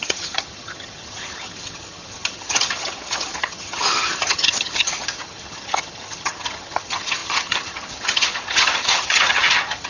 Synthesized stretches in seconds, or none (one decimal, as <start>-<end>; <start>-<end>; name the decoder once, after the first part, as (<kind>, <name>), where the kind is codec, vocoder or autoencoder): 0.0-9.9 (vocoder, HiFi-GAN)